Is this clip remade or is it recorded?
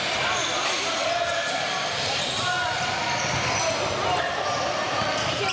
recorded